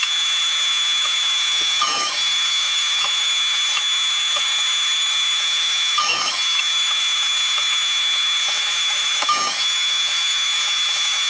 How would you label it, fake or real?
fake